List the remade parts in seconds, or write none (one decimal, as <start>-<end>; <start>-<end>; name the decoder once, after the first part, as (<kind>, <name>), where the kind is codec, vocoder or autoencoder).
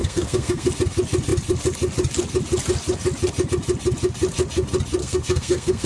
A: 0.0-0.7 (codec, SNAC); 5.0-5.9